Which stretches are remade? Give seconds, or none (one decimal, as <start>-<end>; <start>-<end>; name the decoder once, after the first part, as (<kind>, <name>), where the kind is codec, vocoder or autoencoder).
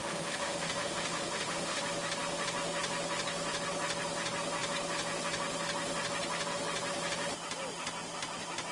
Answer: 0.0-1.8 (autoencoder, DAC-VAE)